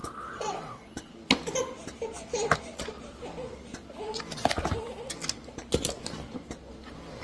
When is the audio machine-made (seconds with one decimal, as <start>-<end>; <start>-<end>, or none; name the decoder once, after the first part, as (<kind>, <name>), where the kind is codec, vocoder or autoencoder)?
0.0-1.1 (vocoder, WaveNeXt)